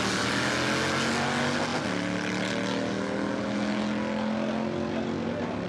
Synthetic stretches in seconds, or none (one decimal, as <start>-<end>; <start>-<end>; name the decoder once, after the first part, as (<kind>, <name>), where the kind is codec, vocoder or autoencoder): none